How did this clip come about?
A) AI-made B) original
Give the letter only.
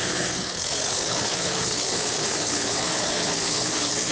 A